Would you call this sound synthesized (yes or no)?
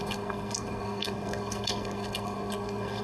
yes